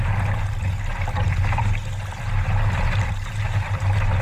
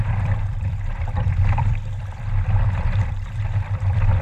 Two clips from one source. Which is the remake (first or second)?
second